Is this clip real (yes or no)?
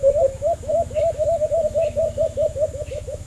no